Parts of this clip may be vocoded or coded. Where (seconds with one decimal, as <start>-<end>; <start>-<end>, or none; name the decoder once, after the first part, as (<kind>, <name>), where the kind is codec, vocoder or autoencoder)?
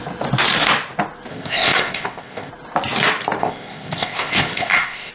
1.3-2.5 (codec, ZipCodec); 3.4-5.1